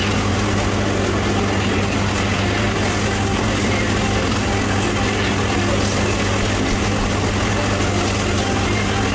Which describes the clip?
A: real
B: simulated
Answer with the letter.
A